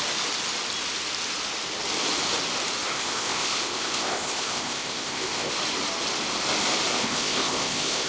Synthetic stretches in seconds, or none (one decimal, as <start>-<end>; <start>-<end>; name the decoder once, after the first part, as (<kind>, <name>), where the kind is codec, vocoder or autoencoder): 2.9-5.5 (codec, ZipCodec); 6.9-8.1